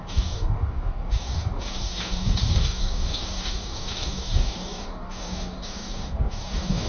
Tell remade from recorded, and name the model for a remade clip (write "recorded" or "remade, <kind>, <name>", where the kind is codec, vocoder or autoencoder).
remade, codec, DAC